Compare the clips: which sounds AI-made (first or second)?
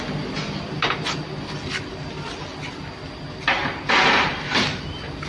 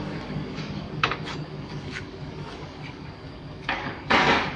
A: second